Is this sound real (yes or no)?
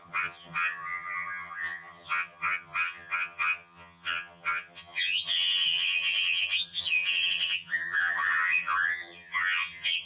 no